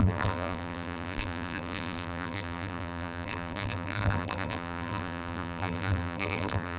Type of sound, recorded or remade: remade